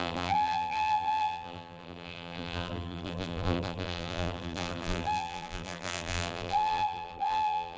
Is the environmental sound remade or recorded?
remade